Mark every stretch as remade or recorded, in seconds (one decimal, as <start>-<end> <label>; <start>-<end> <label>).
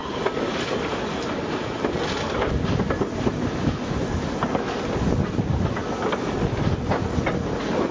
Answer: 0.0-7.9 recorded